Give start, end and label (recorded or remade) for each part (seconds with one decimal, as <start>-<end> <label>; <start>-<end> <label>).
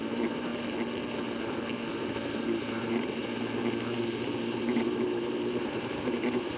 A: 0.0-0.5 remade; 0.5-2.0 recorded; 2.0-3.2 remade; 3.2-4.4 recorded; 4.4-6.6 remade